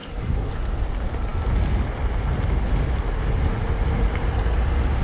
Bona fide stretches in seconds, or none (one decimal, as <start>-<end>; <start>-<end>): 0.5-5.0